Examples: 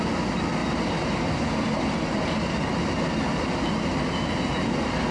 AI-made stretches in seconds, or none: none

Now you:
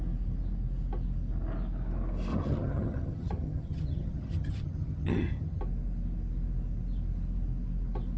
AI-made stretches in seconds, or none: 2.3-5.6 (vocoder, HiFi-GAN)

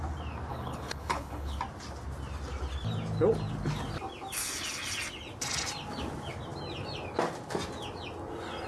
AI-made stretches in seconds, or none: 0.5-1.6 (codec, HILCodec)